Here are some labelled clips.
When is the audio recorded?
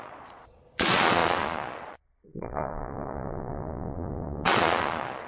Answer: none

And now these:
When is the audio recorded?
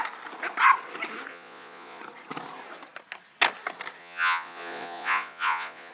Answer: 0.0-1.3; 2.0-4.0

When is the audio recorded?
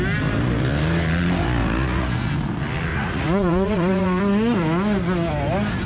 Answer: 0.0-1.6; 2.3-2.9; 4.2-5.9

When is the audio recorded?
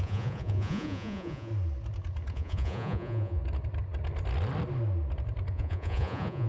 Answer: 1.5-2.3; 3.4-5.5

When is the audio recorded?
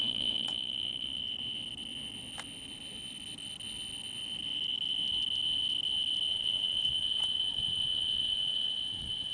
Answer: 1.2-6.3